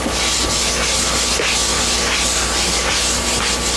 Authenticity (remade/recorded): recorded